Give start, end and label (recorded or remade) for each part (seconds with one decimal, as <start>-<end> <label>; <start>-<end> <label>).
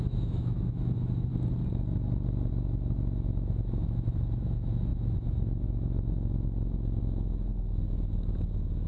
0.0-1.3 remade; 1.3-2.5 recorded; 2.5-8.9 remade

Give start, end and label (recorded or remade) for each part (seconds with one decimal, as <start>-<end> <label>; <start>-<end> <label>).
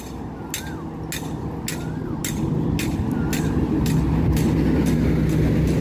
0.0-5.8 recorded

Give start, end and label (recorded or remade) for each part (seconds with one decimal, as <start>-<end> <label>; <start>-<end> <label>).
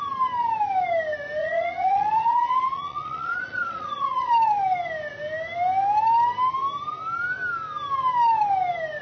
0.0-1.4 recorded; 1.4-4.3 remade; 4.3-9.0 recorded